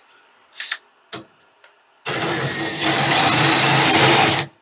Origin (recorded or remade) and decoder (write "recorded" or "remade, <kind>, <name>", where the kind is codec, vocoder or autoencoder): remade, vocoder, BigVGAN v2